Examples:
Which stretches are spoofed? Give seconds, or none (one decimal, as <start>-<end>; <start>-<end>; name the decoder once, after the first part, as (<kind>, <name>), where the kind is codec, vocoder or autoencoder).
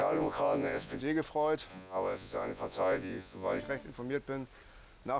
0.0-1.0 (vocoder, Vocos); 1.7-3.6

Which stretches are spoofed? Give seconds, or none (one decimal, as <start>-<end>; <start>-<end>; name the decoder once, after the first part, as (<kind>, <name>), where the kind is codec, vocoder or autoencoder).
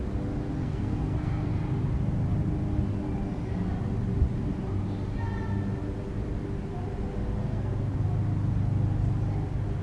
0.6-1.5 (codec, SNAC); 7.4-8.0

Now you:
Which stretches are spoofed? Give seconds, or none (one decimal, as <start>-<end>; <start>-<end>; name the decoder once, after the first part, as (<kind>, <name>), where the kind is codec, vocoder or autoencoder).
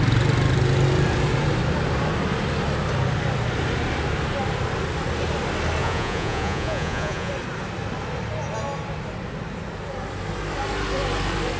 5.8-7.3 (vocoder, Vocos)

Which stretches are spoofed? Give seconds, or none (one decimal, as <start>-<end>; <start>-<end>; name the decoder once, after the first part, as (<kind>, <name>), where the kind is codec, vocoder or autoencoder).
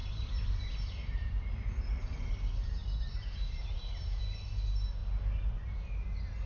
0.0-1.9 (vocoder, BigVGAN v2); 2.8-4.2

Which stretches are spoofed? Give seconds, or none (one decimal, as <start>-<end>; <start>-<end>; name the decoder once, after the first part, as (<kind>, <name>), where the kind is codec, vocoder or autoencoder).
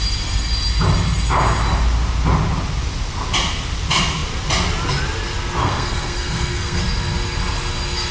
5.6-6.8 (codec, SNAC)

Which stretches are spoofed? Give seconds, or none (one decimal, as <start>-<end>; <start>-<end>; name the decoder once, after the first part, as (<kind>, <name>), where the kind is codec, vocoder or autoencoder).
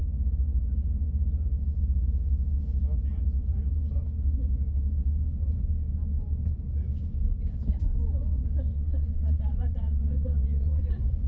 8.7-10.8 (vocoder, WaveNeXt)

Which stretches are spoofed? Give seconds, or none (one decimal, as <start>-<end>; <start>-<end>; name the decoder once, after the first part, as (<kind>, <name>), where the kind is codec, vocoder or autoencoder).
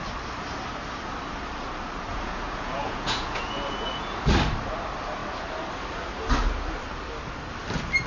2.1-4.3 (vocoder, Vocos)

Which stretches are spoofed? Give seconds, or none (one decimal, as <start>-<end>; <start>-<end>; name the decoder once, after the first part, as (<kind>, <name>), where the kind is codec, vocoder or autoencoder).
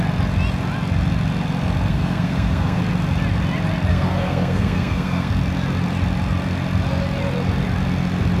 1.9-2.8 (codec, SNAC); 3.9-5.3